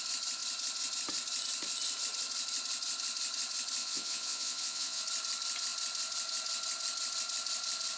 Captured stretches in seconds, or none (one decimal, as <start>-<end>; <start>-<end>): 0.0-3.8; 5.0-8.0